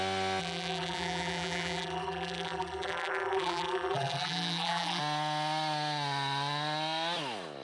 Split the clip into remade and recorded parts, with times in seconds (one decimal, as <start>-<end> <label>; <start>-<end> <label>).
0.0-0.4 recorded; 0.4-5.0 remade; 5.0-7.6 recorded